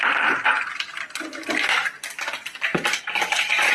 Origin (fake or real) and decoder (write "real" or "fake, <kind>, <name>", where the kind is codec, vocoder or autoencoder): real